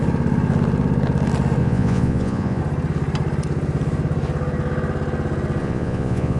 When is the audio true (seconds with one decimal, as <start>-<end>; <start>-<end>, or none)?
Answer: 0.0-1.6; 2.6-5.6